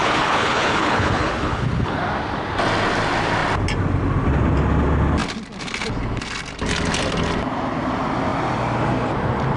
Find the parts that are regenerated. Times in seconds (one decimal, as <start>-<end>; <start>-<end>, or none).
0.0-2.0